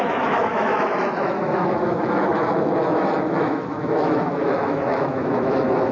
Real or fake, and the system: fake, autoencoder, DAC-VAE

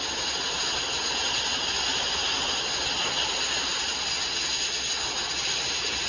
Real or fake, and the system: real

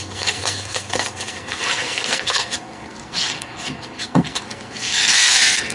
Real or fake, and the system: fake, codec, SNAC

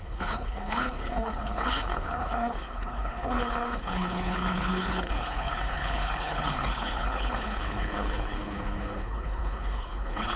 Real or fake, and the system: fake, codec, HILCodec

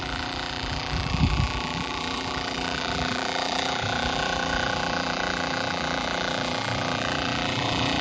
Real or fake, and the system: fake, vocoder, BigVGAN v2